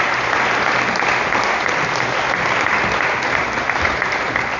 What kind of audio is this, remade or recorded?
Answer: recorded